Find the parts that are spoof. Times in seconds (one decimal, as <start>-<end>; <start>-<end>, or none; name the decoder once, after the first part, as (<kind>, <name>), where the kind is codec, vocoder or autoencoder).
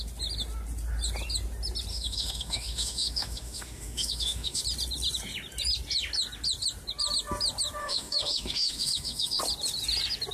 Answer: 1.9-4.6 (autoencoder, DAC-VAE); 7.8-9.4